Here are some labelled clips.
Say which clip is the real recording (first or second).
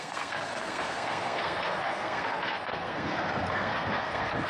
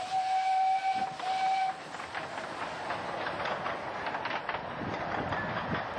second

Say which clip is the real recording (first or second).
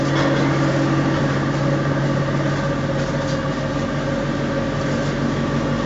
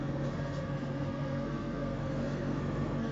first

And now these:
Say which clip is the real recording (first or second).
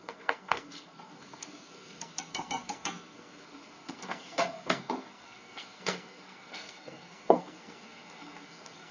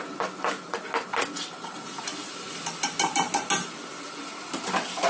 second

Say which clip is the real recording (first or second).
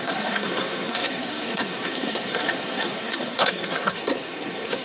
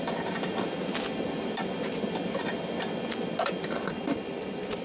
second